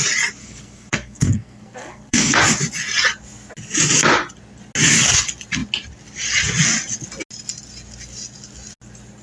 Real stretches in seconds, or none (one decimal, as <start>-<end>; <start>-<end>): 0.0-0.4; 2.4-9.2